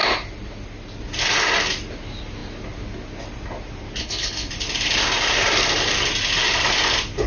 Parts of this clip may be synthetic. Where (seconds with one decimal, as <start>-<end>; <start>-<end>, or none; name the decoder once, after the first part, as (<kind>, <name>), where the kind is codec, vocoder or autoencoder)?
4.0-4.5 (codec, HILCodec)